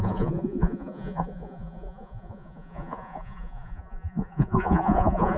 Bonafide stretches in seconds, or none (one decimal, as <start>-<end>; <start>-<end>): none